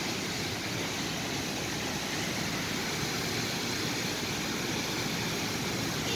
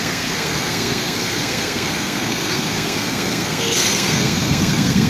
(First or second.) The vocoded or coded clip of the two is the second